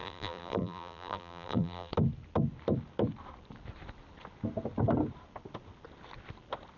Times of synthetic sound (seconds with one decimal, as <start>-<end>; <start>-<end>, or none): 0.0-1.9

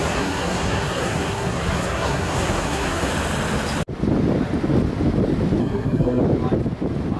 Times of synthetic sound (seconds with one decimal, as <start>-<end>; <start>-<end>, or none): 0.0-3.1; 5.6-6.2